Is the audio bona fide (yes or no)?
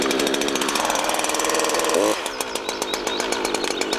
no